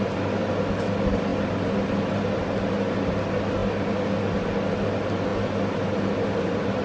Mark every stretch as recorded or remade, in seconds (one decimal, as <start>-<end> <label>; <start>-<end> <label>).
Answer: 0.0-6.8 recorded